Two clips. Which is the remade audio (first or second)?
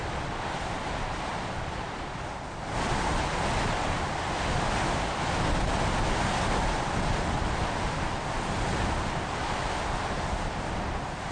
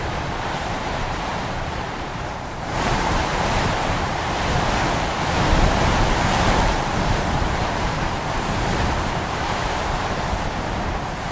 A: second